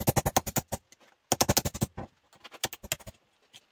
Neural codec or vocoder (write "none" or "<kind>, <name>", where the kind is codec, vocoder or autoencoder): none